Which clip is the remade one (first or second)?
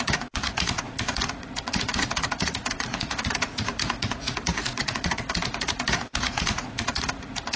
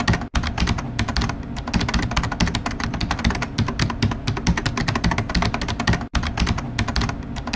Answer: first